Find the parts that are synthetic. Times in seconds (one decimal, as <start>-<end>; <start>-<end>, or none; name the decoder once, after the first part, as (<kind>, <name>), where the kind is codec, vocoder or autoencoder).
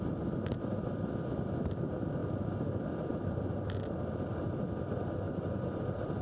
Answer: none